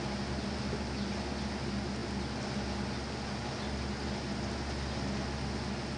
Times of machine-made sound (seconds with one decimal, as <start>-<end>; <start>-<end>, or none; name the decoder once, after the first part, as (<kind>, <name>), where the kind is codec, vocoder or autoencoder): none